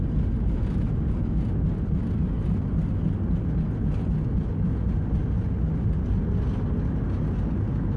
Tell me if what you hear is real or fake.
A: real